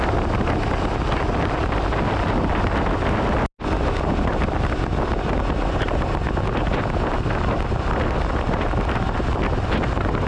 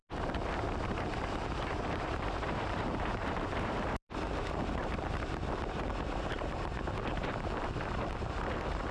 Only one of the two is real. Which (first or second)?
first